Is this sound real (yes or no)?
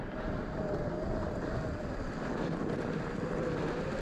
yes